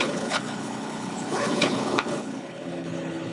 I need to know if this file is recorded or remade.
remade